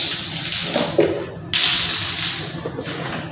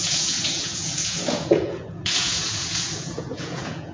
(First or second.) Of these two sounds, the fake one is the second